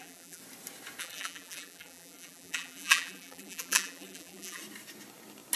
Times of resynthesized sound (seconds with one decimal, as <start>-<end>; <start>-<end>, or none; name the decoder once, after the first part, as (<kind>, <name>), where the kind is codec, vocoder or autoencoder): 0.0-0.4 (vocoder, BigVGAN v2); 1.0-4.6